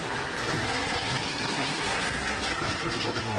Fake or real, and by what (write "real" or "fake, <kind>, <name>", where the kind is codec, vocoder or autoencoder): fake, codec, SNAC